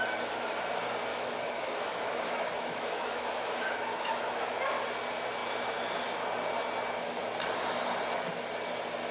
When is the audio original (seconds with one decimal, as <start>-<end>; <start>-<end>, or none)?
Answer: 0.0-1.1; 4.6-9.1